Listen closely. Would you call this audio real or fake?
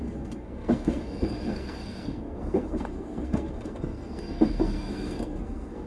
fake